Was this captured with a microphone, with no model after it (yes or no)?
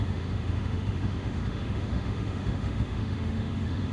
no